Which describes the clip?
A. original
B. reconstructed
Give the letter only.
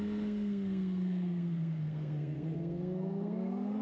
B